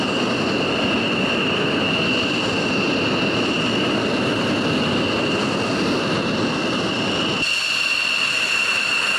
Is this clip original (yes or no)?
yes